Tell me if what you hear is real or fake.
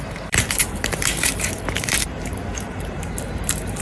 fake